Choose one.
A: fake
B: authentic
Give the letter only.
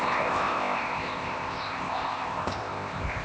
A